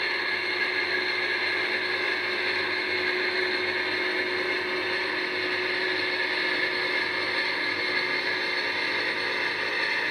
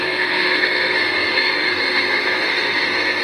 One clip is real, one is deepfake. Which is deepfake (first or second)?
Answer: second